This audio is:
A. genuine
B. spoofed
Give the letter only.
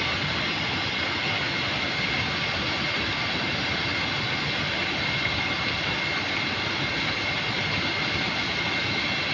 A